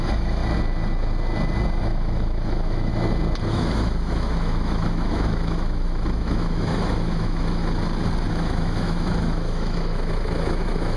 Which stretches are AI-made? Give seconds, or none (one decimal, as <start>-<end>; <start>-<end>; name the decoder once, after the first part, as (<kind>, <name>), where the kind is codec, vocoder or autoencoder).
0.0-0.4 (autoencoder, DAC-VAE); 1.8-2.9; 3.5-7.6; 8.3-11.0